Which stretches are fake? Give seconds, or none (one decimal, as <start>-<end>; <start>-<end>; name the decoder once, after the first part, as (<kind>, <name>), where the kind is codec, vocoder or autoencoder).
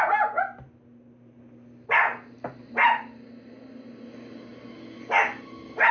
none